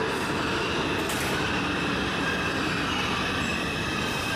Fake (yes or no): no